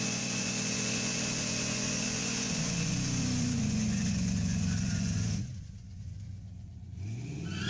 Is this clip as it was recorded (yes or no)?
no